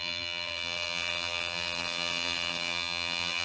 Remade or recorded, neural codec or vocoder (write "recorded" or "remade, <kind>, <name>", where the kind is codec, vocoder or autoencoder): remade, vocoder, BigVGAN v2